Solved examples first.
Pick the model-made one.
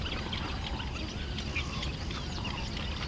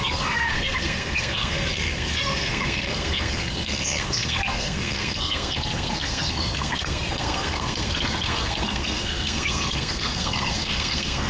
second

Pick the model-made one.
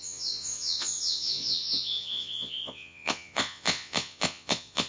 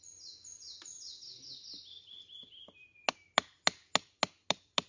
first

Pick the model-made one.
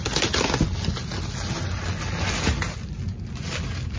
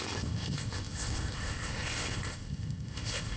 second